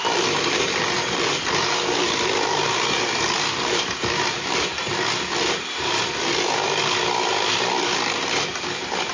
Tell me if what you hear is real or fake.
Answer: real